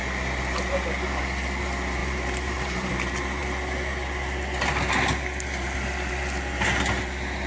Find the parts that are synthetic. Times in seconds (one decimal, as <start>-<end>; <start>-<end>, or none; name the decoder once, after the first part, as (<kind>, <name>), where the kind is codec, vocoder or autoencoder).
2.0-2.9 (vocoder, BigVGAN v2)